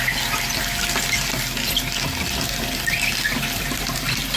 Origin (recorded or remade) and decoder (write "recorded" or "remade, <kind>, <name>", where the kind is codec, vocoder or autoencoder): recorded